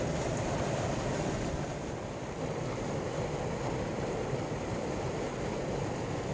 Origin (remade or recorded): recorded